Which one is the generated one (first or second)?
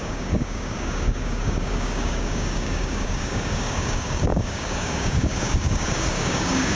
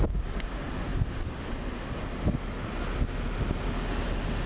first